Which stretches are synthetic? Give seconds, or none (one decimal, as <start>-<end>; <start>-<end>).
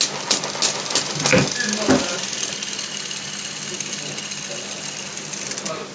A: none